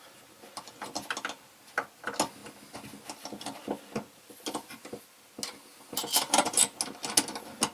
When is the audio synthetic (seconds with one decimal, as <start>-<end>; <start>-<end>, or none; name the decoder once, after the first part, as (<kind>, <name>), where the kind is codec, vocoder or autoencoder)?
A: 5.7-6.6 (vocoder, BigVGAN v2)